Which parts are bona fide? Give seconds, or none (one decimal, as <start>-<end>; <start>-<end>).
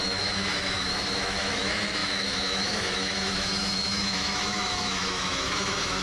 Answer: none